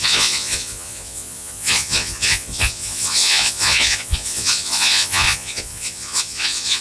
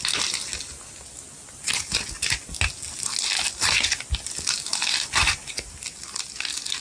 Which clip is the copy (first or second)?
first